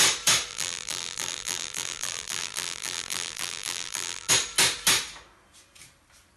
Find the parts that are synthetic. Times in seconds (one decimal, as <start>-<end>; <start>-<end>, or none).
0.5-4.3